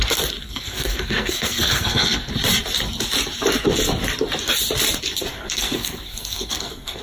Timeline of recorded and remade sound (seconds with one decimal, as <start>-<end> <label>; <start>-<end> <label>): 0.0-0.4 recorded; 0.4-2.3 remade; 2.3-5.3 recorded; 5.3-7.0 remade

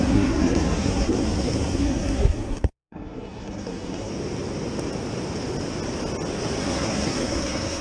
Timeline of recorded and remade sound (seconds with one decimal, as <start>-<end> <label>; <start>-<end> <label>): 0.0-4.1 remade; 4.1-6.6 recorded; 6.6-7.8 remade

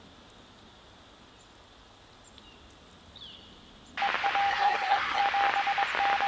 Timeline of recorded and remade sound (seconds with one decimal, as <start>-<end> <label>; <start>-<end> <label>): 0.0-4.5 recorded; 4.5-5.2 remade; 5.2-6.3 recorded